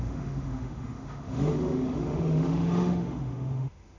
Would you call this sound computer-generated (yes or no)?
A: yes